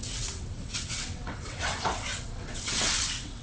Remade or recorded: remade